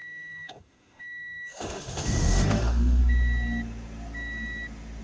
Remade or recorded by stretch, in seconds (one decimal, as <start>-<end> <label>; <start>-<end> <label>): 0.0-3.0 remade; 3.0-5.0 recorded